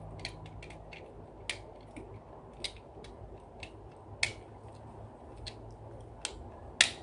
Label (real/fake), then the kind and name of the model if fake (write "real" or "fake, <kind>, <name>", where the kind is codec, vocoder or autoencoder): real